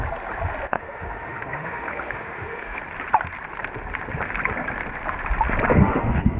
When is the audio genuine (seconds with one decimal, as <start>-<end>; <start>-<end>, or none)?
0.0-0.7; 2.8-5.7